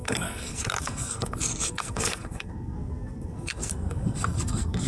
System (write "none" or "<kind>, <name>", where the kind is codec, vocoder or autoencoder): codec, SNAC